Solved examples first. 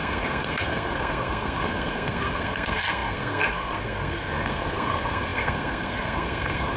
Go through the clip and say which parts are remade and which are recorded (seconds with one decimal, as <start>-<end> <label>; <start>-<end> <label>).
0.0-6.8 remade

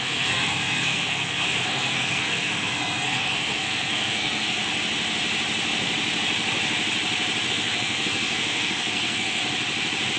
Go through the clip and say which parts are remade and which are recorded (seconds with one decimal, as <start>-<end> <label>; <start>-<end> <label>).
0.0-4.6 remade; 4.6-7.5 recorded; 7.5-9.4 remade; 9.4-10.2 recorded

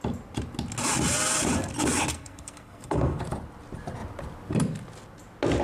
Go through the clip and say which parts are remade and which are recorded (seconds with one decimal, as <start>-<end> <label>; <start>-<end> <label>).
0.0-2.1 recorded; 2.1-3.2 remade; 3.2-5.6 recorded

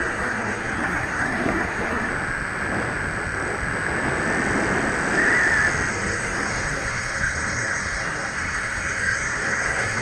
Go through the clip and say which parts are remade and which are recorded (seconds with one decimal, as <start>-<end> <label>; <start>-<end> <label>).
0.0-2.1 remade; 2.1-5.9 recorded; 5.9-10.0 remade

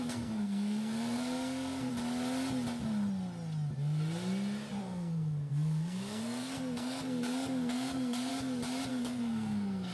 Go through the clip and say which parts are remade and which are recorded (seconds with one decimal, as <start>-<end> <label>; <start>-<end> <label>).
0.0-1.9 remade; 1.9-4.8 recorded; 4.8-8.3 remade; 8.3-8.9 recorded; 8.9-9.9 remade

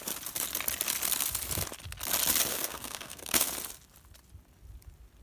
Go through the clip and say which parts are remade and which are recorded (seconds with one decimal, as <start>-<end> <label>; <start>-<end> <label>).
0.0-2.5 recorded; 2.5-3.5 remade; 3.5-5.2 recorded